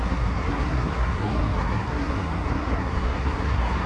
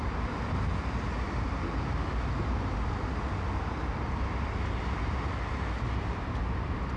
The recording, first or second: second